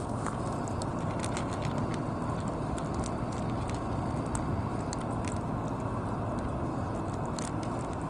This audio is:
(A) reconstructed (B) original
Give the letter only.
B